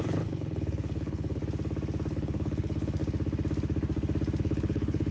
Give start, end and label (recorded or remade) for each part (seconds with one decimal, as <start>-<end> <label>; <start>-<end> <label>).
0.0-1.4 remade; 1.4-2.1 recorded; 2.1-3.0 remade; 3.0-4.4 recorded; 4.4-5.1 remade